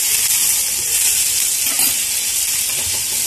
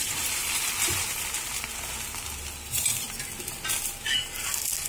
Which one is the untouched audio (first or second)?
first